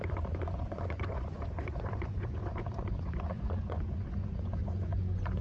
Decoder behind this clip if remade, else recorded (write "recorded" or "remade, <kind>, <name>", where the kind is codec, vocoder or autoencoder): remade, vocoder, Vocos